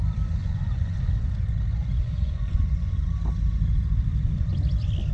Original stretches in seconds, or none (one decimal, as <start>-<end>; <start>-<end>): 0.0-0.4; 1.3-1.8; 3.1-5.1